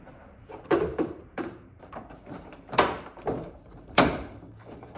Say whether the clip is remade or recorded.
remade